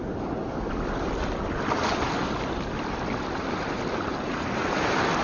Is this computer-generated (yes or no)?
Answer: no